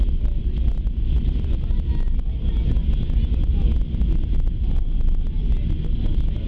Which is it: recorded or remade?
recorded